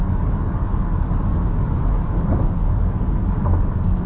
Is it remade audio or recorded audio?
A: remade